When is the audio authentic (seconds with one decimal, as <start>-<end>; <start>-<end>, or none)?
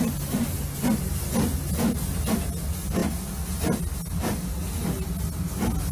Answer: 0.0-5.9